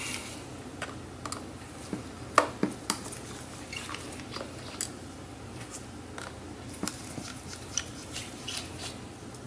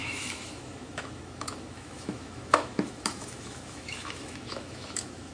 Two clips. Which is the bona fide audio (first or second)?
first